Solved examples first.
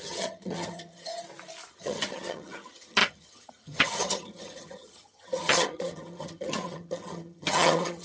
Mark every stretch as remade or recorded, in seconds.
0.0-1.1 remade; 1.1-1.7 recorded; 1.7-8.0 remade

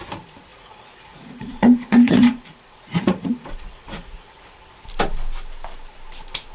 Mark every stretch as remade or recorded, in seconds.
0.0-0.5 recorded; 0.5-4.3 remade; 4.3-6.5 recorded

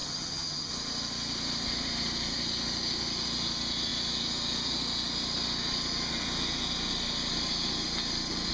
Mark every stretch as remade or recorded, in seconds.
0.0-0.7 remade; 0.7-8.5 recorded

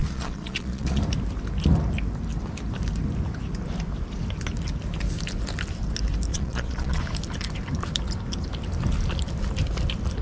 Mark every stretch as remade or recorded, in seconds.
0.0-1.0 remade; 1.0-6.3 recorded; 6.3-7.0 remade; 7.0-10.2 recorded

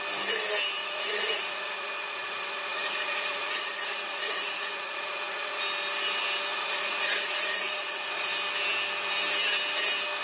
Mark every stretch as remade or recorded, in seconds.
0.0-0.8 recorded; 0.8-5.6 remade; 5.6-6.5 recorded; 6.5-8.3 remade; 8.3-10.2 recorded

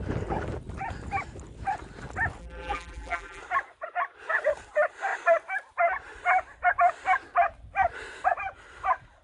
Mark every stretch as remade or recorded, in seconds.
0.0-2.4 recorded; 2.4-3.4 remade; 3.4-9.2 recorded